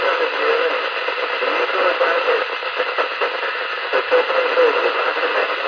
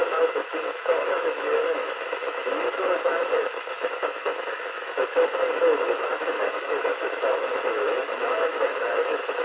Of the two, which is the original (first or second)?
first